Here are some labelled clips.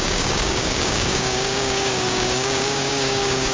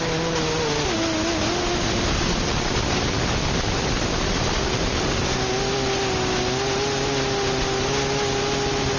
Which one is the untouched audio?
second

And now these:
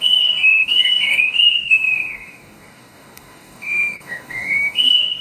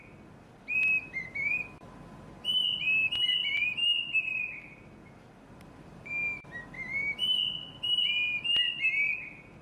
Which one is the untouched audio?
second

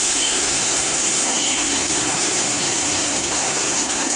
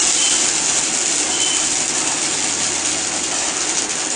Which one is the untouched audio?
second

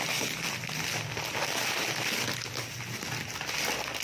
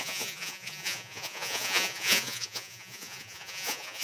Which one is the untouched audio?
first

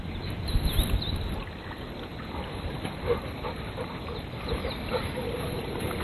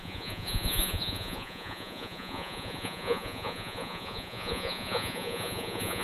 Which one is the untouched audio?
first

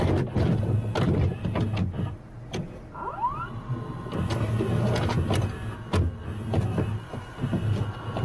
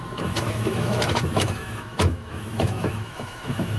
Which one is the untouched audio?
first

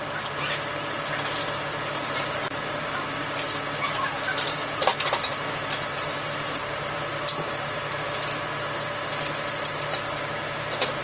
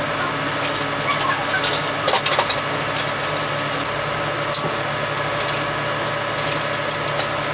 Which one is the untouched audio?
second